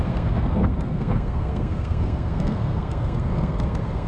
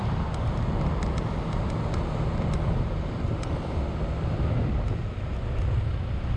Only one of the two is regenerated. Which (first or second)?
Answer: first